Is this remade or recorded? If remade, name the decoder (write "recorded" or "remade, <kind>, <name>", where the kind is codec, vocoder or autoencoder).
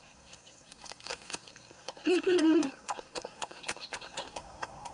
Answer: remade, codec, SNAC